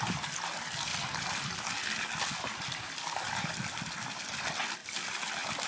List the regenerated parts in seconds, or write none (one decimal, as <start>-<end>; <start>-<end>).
none